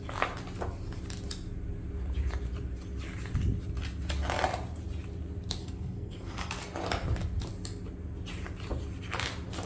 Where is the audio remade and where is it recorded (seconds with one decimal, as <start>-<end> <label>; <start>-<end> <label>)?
0.0-5.6 recorded; 5.6-6.5 remade; 6.5-9.7 recorded